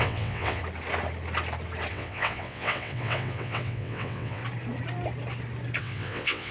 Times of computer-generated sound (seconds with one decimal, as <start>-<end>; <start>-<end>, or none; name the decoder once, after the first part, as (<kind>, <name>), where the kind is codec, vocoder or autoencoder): 0.0-0.6 (vocoder, WaveNeXt); 1.9-4.4; 5.8-6.5